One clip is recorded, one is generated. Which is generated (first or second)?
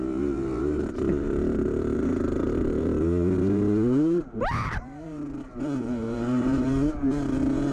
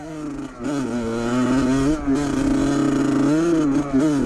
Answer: first